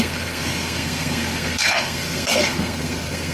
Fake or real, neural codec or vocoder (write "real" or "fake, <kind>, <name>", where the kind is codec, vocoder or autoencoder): fake, codec, SNAC